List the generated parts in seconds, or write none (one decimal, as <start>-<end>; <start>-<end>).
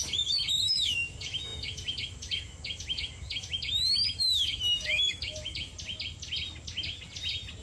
0.0-5.7